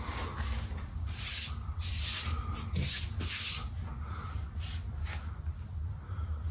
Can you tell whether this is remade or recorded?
recorded